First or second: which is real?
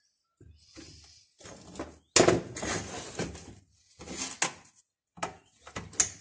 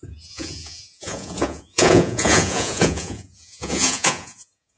first